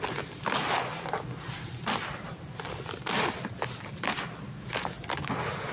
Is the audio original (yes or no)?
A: yes